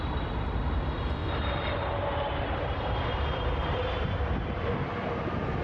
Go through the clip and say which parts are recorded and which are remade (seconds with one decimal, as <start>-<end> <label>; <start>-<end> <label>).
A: 0.0-1.2 recorded; 1.2-4.6 remade; 4.6-5.6 recorded